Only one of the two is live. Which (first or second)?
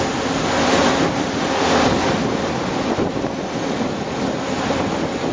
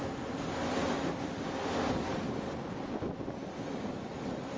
first